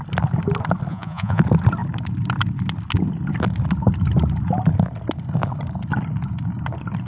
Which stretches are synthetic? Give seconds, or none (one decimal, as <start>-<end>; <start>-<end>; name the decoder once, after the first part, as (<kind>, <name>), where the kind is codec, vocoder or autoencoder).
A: 0.9-1.4 (vocoder, Vocos)